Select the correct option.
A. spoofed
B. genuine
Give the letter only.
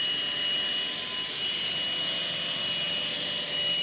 B